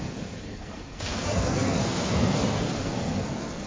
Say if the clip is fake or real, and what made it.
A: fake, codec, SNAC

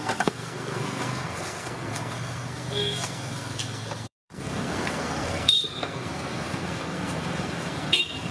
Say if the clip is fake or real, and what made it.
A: fake, codec, SNAC